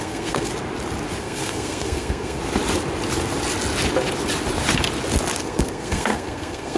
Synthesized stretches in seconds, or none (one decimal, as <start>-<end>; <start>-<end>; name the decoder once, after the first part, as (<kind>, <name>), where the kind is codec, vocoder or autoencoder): 0.0-0.5 (codec, SNAC); 1.2-2.4; 5.4-6.8